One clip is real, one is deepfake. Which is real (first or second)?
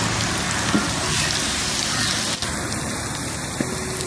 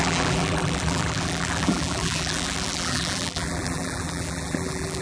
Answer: first